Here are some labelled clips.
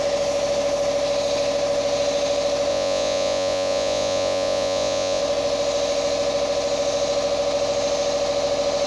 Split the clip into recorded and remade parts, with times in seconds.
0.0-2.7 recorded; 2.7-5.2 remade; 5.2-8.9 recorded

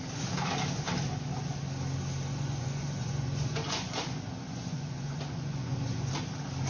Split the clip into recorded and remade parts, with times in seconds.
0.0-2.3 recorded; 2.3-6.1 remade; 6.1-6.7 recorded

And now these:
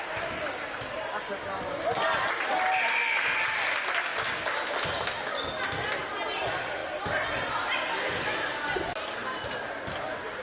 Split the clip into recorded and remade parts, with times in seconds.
0.0-10.4 recorded

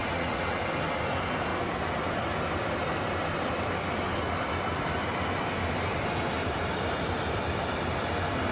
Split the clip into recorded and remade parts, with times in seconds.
0.0-0.6 remade; 0.6-8.5 recorded

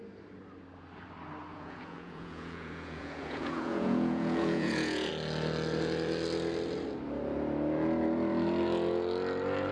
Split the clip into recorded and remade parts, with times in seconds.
0.0-1.5 recorded; 1.5-5.1 remade; 5.1-9.7 recorded

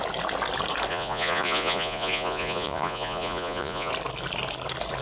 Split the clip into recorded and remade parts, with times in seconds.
0.0-0.9 recorded; 0.9-3.9 remade; 3.9-5.0 recorded

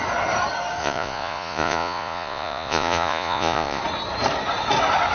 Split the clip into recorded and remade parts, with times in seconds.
0.0-0.8 recorded; 0.8-3.8 remade; 3.8-5.1 recorded

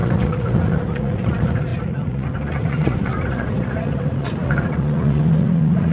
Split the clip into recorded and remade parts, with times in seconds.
0.0-5.9 remade